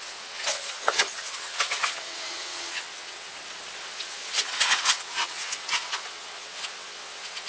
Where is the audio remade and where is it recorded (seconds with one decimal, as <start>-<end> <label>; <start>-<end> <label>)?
0.0-3.3 remade; 3.3-3.8 recorded; 3.8-7.5 remade